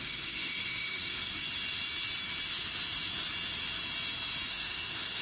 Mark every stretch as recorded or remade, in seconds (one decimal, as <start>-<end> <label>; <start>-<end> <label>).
0.0-1.4 remade; 1.4-4.5 recorded; 4.5-5.2 remade